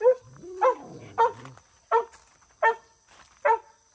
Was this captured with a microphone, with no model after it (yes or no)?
yes